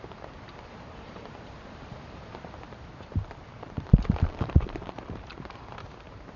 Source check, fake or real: fake